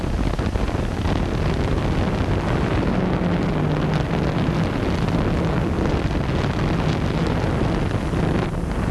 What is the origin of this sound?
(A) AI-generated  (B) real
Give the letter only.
B